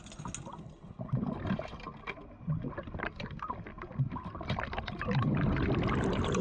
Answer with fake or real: real